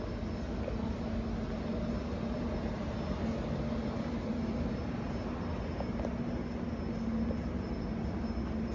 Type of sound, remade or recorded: recorded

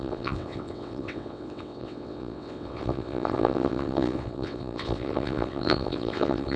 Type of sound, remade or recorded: remade